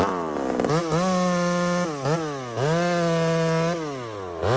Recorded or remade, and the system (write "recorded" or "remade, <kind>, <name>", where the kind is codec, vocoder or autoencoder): recorded